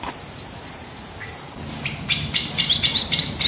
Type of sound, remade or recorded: remade